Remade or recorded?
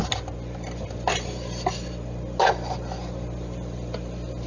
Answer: recorded